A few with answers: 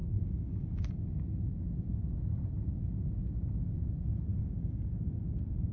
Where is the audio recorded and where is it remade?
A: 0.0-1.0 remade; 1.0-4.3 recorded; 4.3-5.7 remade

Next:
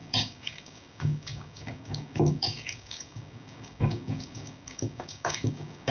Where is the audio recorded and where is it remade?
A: 0.0-5.9 remade

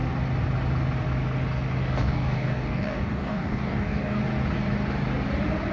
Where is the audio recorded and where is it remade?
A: 0.0-1.8 recorded; 1.8-4.2 remade; 4.2-5.7 recorded

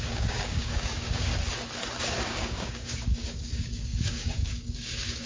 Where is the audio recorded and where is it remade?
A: 0.0-1.3 remade; 1.3-2.0 recorded; 2.0-5.3 remade